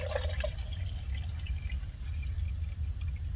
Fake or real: real